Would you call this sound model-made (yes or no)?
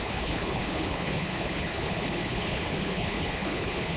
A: yes